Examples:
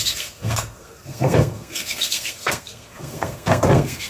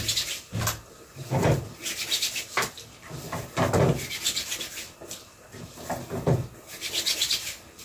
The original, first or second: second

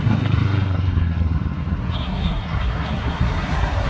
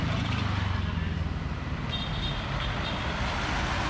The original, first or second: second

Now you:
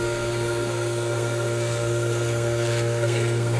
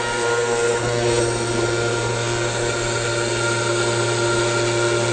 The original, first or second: second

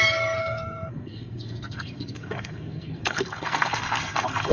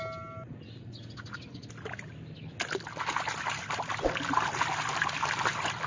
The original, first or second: second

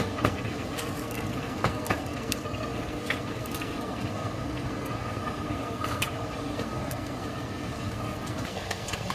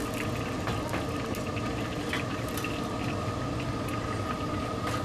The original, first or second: second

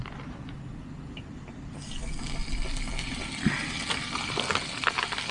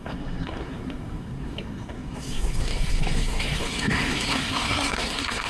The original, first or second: first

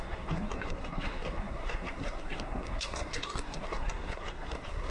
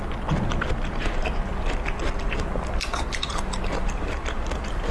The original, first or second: second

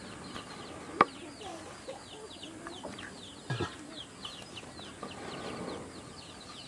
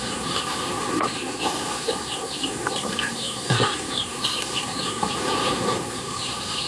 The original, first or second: first